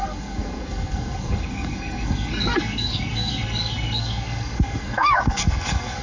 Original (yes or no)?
no